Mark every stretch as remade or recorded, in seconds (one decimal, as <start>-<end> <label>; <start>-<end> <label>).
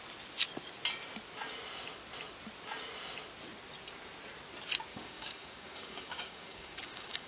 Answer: 0.0-4.9 recorded; 4.9-7.3 remade